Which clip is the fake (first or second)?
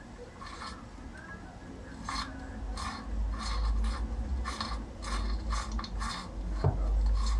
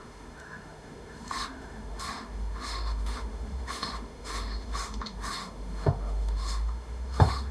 second